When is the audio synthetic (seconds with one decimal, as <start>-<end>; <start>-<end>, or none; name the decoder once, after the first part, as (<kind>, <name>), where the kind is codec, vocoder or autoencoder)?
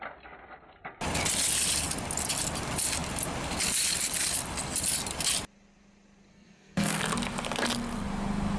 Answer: 6.3-7.0 (codec, SNAC)